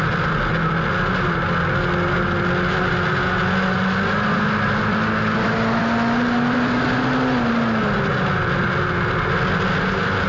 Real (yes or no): yes